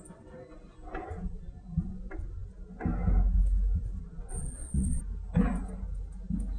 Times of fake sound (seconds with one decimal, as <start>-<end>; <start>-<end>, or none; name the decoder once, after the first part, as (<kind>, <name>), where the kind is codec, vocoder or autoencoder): 4.3-5.0 (vocoder, Vocos)